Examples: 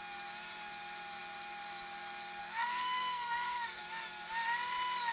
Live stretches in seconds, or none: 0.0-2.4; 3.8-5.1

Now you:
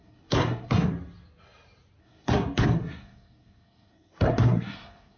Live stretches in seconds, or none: 0.9-2.0

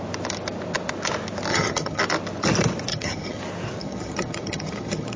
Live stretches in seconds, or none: 0.0-1.5; 2.0-2.9; 3.4-3.8